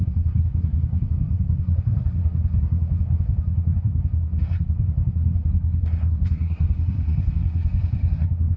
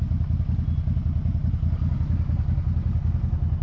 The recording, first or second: second